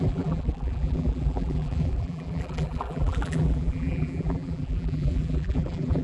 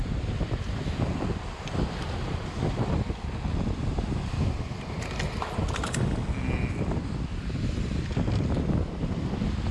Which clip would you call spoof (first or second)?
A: first